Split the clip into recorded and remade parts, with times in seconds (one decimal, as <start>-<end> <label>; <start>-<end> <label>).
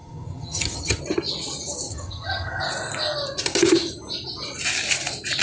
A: 0.0-1.0 remade; 1.0-1.9 recorded; 1.9-2.6 remade; 2.6-5.4 recorded